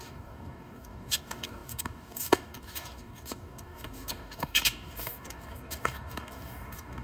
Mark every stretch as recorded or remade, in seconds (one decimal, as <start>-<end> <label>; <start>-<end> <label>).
0.0-7.0 remade